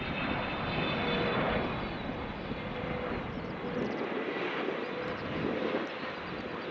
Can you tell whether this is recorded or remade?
recorded